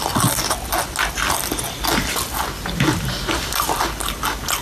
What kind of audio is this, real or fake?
real